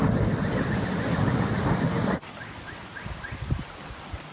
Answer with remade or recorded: recorded